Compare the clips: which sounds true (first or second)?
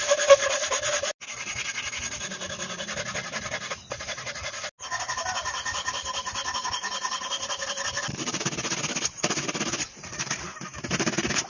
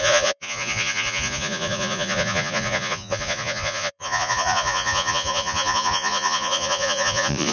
first